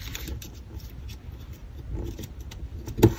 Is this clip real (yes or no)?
yes